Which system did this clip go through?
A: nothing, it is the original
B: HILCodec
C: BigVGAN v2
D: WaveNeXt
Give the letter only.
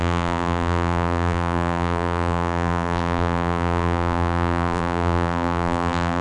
C